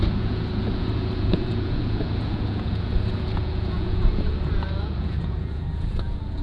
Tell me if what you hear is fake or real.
fake